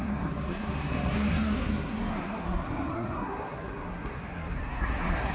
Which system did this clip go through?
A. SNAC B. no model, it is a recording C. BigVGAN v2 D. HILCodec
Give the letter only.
A